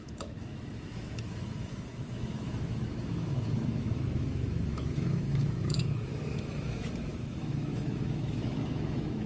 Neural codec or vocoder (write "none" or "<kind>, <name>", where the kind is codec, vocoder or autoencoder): autoencoder, DAC-VAE